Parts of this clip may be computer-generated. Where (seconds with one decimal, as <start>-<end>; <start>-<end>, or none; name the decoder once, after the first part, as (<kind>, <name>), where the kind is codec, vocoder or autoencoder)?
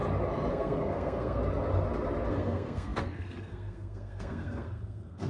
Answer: 0.5-1.4 (codec, SNAC); 2.3-5.3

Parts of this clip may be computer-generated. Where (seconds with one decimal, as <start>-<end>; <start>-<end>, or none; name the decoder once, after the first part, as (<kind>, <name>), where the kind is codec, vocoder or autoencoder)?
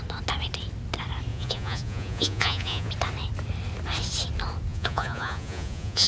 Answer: 1.3-2.9 (vocoder, Vocos); 4.7-6.1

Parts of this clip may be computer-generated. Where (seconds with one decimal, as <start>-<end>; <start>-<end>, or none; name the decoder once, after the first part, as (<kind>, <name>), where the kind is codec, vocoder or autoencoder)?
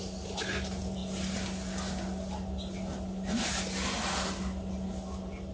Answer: none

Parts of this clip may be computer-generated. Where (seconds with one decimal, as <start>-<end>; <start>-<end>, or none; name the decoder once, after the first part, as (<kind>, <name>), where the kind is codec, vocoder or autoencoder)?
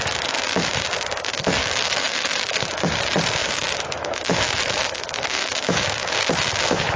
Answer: 1.6-3.0 (autoencoder, DAC-VAE); 3.4-6.3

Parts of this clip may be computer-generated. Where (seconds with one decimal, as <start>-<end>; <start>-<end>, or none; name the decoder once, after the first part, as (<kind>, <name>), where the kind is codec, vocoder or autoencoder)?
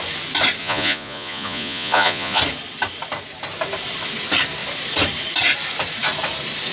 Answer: 0.6-2.4 (vocoder, Vocos)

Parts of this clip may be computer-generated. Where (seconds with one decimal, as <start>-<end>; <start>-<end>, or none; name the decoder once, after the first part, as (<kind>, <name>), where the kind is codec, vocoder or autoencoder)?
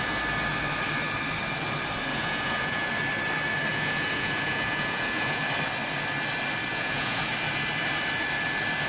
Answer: 2.1-2.9 (vocoder, Vocos); 3.7-5.4; 6.7-7.3